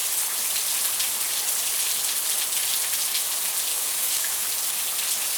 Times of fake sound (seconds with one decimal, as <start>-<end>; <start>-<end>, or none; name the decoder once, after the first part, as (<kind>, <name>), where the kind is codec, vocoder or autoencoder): 3.7-4.5 (codec, DAC)